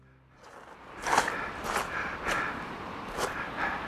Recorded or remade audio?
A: recorded